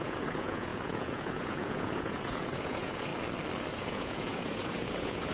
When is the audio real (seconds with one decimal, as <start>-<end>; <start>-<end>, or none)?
3.1-3.7